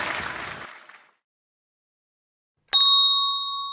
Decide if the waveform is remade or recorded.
recorded